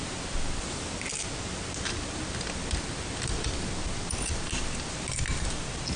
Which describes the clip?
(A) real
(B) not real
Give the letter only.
A